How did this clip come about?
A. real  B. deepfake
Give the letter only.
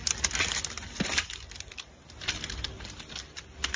A